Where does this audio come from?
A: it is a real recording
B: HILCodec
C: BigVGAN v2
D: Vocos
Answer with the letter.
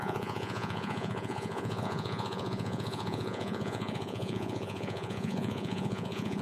D